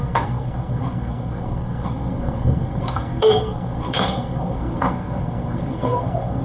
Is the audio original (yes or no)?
no